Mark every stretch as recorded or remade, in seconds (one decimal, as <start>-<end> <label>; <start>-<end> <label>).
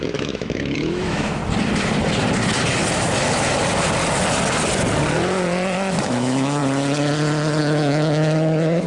0.0-1.4 remade; 1.4-6.0 recorded; 6.0-6.6 remade; 6.6-7.6 recorded; 7.6-8.9 remade